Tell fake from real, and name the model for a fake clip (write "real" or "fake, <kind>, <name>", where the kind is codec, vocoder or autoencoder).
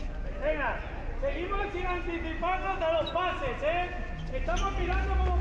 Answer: real